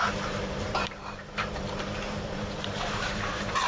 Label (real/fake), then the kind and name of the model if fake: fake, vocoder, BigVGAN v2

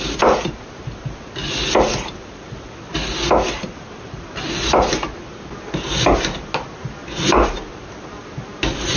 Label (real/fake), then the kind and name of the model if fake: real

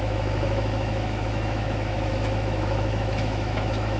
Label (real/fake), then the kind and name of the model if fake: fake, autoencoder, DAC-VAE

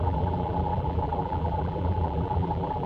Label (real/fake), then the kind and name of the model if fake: fake, vocoder, BigVGAN v2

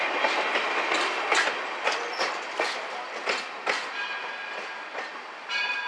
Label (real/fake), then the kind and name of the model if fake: real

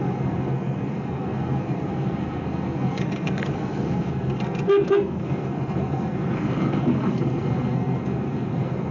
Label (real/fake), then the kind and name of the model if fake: fake, codec, SNAC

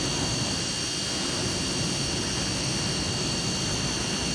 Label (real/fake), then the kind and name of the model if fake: real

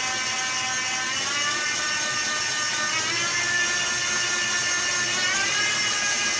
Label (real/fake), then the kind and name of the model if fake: real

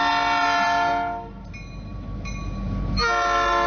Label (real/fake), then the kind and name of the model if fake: real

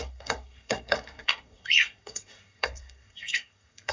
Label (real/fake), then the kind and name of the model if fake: fake, codec, SNAC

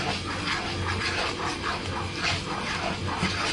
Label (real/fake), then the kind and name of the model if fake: real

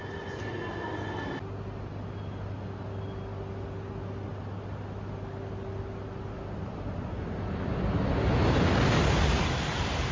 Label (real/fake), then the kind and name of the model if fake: real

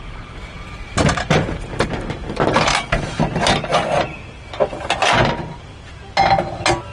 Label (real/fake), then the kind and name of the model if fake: real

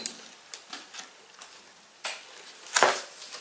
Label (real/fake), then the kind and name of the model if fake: real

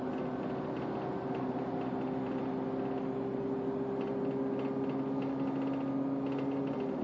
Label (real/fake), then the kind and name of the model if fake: real